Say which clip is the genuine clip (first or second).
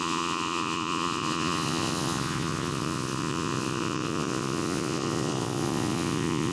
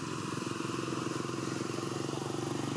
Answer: second